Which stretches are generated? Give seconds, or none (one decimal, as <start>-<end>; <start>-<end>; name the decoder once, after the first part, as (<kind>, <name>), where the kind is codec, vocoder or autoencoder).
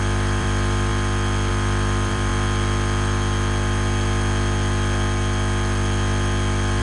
0.0-0.9 (vocoder, BigVGAN v2); 1.5-2.3